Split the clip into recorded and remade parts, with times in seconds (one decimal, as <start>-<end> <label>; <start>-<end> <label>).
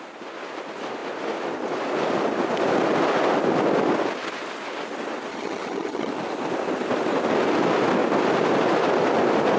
0.0-5.3 recorded; 5.3-6.1 remade; 6.1-9.6 recorded